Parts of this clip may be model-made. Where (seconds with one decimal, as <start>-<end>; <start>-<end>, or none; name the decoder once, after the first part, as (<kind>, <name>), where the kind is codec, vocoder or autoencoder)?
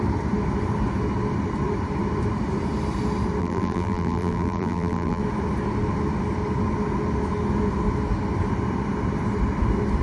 3.4-5.2 (vocoder, BigVGAN v2)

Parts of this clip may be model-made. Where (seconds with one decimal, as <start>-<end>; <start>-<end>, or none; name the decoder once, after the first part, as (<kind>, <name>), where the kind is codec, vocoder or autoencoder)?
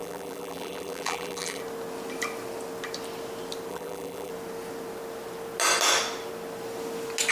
0.0-1.6 (vocoder, BigVGAN v2); 3.7-4.3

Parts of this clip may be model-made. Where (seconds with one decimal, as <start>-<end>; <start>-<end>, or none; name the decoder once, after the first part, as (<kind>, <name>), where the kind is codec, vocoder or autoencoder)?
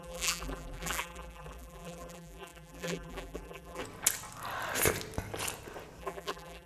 0.0-3.8 (vocoder, BigVGAN v2); 6.0-6.7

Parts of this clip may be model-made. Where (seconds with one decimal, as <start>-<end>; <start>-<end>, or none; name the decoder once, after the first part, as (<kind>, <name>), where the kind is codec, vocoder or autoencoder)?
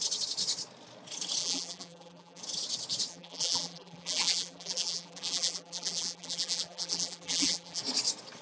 1.4-2.4 (vocoder, BigVGAN v2); 3.1-7.8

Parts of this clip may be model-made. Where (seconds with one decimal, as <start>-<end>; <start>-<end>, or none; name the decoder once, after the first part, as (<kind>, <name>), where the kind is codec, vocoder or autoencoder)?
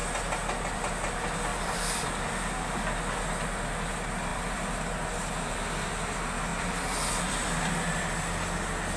1.5-3.0 (vocoder, BigVGAN v2); 4.3-5.1; 6.5-7.6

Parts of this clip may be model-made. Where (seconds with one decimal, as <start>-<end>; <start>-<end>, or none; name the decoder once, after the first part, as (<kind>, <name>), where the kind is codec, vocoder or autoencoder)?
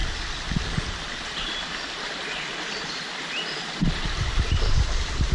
1.0-5.3 (vocoder, BigVGAN v2)